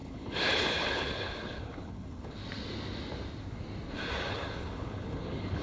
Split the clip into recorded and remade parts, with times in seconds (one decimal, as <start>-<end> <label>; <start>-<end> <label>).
0.0-2.4 remade; 2.4-4.3 recorded; 4.3-5.6 remade